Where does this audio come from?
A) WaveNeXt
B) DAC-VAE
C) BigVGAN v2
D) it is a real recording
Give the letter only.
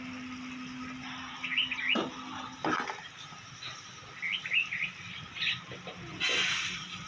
D